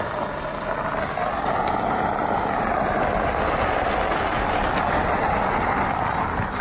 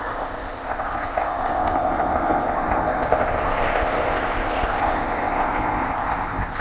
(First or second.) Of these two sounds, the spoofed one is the second